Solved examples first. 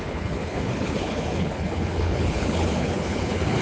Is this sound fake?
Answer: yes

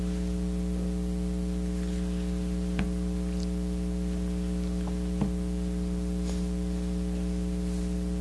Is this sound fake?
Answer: no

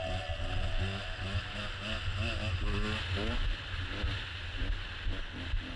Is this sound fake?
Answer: no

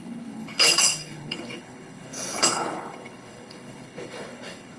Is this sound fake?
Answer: yes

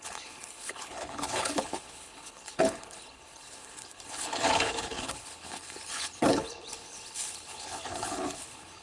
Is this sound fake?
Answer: yes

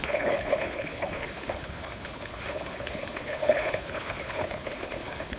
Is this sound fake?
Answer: yes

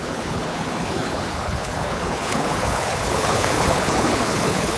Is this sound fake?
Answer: yes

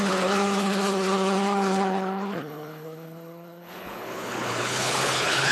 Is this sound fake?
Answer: yes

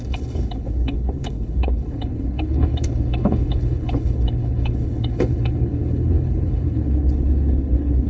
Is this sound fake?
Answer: yes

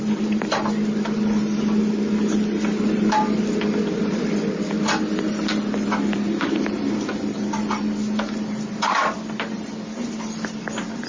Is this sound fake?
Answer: no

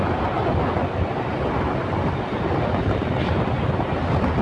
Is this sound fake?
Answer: no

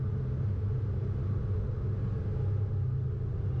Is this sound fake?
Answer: no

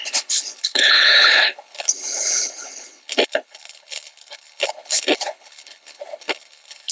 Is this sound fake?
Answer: yes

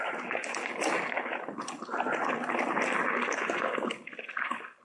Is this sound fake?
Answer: no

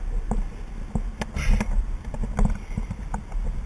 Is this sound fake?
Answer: no